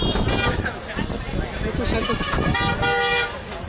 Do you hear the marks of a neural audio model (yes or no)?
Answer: no